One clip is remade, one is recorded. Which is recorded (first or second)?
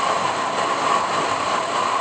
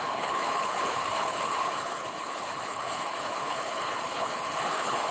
first